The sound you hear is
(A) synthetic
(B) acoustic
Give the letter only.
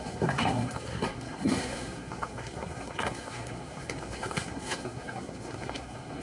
A